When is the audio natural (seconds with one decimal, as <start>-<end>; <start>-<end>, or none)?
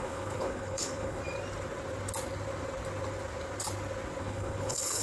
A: 1.2-4.2